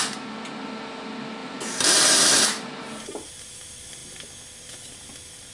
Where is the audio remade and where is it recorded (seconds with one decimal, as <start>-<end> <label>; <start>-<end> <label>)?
0.0-1.4 recorded; 1.4-3.0 remade; 3.0-5.5 recorded

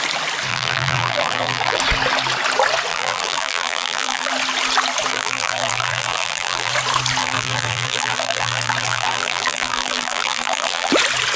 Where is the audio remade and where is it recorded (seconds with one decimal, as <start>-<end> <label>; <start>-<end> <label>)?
0.0-0.5 recorded; 0.5-1.8 remade; 1.8-2.9 recorded; 2.9-4.3 remade; 4.3-5.1 recorded; 5.1-6.7 remade; 6.7-7.2 recorded; 7.2-10.9 remade; 10.9-11.4 recorded

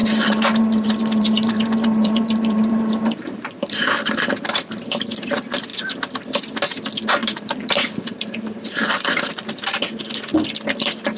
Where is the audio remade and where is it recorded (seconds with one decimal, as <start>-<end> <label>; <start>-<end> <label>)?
0.0-5.0 remade; 5.0-7.2 recorded; 7.2-8.5 remade; 8.5-11.2 recorded